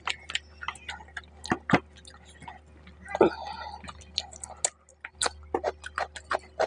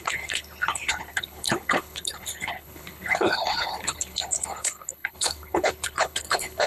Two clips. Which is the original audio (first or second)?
first